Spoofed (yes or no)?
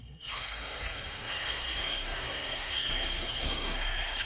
yes